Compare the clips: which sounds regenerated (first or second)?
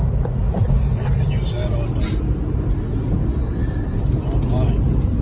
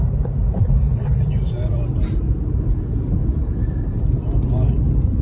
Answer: second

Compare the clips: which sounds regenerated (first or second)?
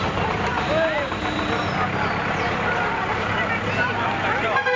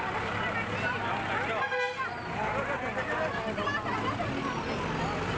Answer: first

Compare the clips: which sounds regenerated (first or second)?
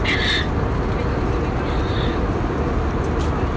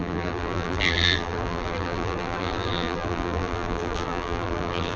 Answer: second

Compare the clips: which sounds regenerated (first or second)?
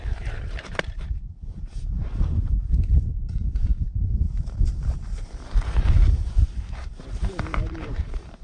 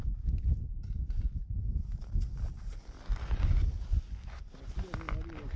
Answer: first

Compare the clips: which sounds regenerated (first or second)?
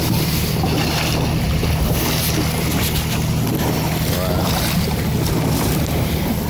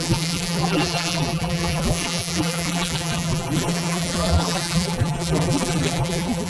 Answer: second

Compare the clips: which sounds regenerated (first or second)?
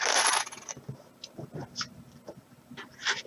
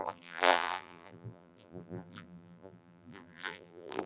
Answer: second